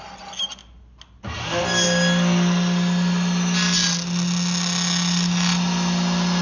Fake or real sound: real